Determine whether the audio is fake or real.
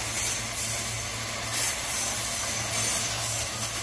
real